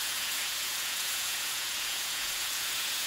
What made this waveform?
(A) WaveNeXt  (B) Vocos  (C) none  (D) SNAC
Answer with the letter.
B